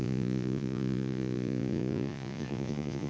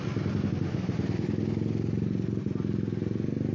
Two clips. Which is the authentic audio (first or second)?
second